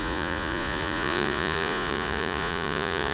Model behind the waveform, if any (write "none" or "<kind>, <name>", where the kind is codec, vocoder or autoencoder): vocoder, Vocos